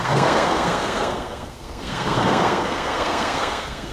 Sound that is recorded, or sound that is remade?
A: remade